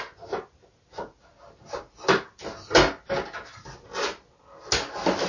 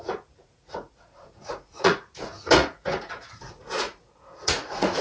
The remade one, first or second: second